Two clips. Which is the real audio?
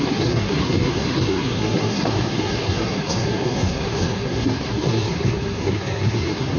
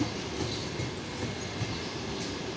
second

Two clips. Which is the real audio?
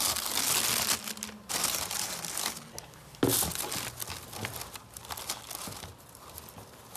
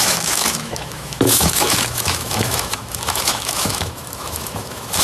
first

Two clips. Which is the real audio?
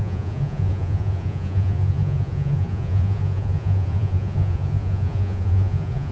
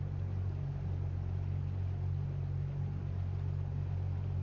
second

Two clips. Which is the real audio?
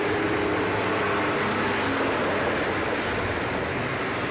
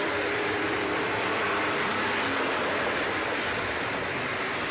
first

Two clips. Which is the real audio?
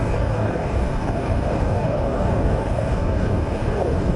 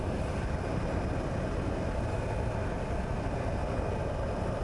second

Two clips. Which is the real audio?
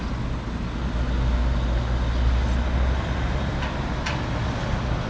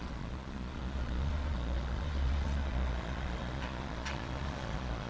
first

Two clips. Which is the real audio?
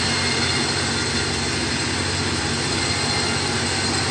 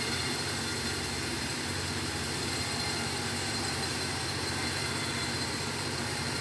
first